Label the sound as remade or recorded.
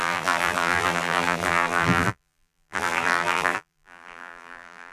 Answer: remade